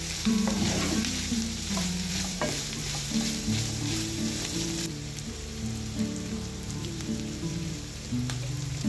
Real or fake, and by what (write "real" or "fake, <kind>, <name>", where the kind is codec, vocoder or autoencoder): fake, vocoder, BigVGAN v2